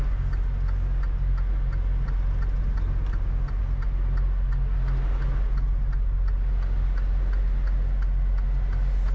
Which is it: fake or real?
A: real